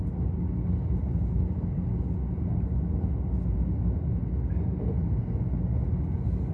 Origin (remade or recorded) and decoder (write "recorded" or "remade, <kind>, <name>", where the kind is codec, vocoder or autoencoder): recorded